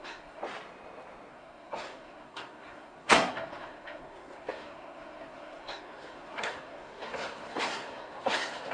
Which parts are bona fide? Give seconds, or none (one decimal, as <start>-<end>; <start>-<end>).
0.4-1.3